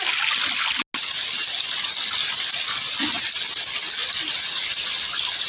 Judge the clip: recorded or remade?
recorded